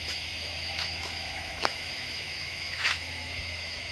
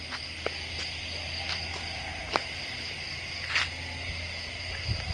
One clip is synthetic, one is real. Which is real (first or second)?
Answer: second